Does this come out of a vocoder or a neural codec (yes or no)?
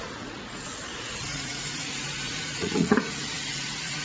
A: yes